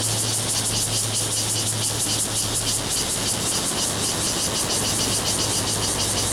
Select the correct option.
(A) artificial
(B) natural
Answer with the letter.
B